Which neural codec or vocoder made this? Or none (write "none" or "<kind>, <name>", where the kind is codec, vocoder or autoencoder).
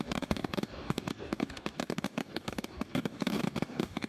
codec, DAC